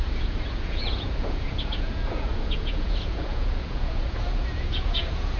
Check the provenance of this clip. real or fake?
fake